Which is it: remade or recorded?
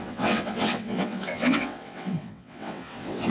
remade